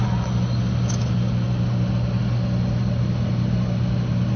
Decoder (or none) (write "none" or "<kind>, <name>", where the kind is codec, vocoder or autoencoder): none